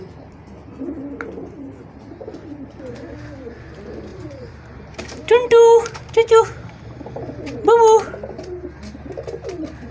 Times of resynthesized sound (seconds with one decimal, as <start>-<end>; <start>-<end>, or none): 4.1-7.6

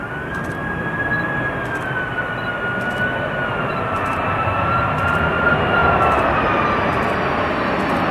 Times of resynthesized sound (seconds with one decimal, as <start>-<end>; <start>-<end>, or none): none

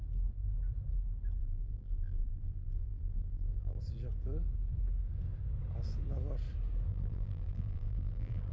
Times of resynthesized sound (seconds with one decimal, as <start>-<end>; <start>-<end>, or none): 1.4-3.8; 6.9-8.5

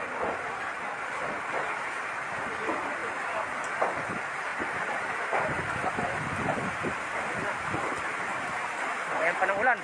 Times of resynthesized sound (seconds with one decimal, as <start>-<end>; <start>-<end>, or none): 4.5-5.9

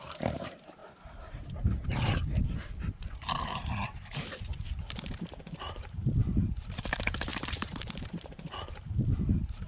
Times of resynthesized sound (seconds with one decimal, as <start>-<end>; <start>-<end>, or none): 0.0-9.7

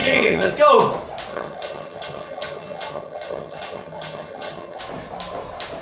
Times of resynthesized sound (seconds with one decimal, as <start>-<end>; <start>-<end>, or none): 0.0-0.5; 1.3-4.8